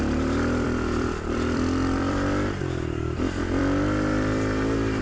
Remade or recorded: remade